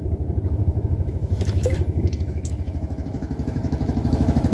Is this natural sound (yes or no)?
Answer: no